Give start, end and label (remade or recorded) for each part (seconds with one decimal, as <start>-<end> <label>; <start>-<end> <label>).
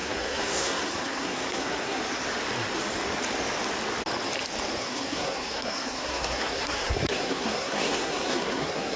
0.0-2.0 remade; 2.0-4.8 recorded; 4.8-9.0 remade